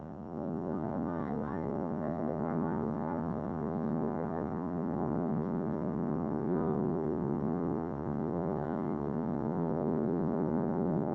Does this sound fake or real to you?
fake